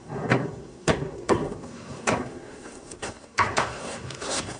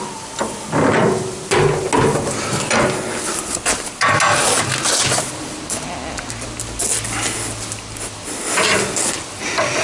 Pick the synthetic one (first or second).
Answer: first